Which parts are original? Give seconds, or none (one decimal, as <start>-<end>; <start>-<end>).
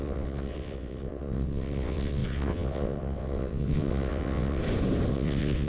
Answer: 4.6-5.1